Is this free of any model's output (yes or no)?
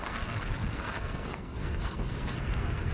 no